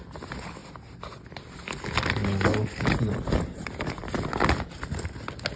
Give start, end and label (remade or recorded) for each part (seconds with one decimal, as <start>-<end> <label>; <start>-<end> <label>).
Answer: 0.0-5.6 recorded